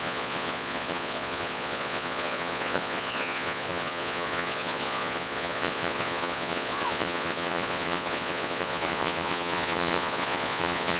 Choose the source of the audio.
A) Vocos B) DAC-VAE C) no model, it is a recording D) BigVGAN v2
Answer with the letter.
A